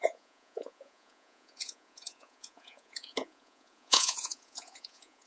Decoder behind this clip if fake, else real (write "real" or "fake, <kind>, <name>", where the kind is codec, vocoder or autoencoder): fake, vocoder, Vocos